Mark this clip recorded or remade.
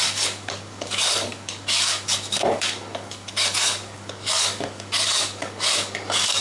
remade